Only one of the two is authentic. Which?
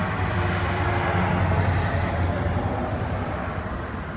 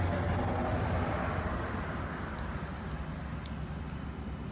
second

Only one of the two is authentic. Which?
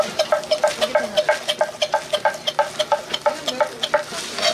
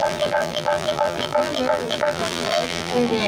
first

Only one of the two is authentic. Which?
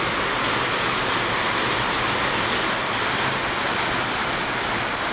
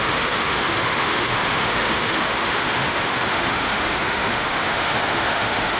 first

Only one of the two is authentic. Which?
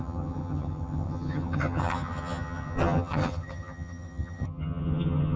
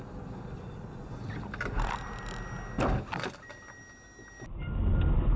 second